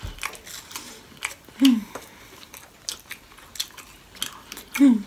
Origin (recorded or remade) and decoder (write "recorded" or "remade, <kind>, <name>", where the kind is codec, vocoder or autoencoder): recorded